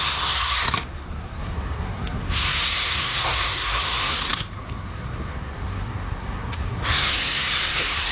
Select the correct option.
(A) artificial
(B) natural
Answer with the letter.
A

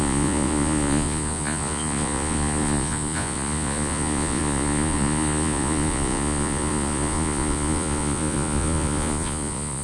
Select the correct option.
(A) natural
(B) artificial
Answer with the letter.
B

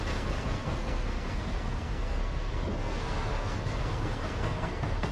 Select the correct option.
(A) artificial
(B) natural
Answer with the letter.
A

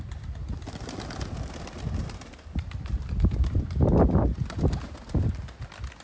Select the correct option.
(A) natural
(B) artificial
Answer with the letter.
A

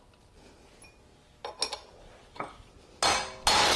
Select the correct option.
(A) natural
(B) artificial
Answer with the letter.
A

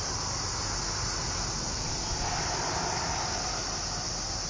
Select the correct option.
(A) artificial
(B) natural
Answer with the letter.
B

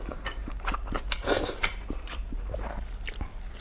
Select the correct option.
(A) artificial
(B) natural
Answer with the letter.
A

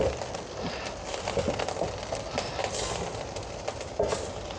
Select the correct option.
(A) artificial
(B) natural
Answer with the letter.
B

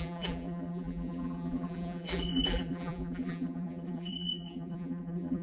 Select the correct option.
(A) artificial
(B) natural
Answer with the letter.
A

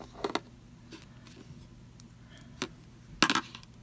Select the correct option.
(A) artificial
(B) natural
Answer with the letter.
B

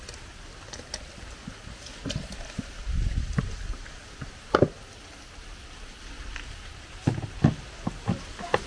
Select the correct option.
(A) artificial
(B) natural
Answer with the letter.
B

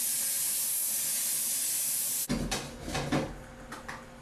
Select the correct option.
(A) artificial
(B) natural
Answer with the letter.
B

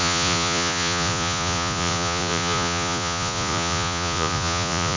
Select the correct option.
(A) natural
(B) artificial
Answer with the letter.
B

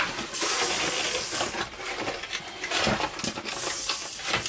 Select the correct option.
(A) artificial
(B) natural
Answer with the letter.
B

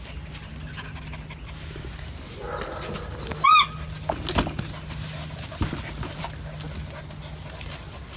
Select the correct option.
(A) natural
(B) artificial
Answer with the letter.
A